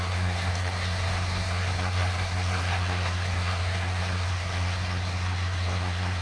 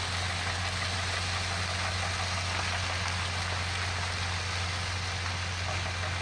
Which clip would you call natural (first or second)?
second